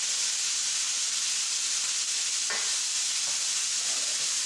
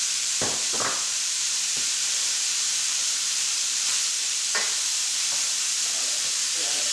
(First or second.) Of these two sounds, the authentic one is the first